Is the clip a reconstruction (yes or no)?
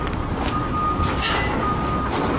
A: no